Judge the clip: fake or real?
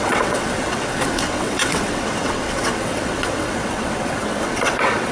fake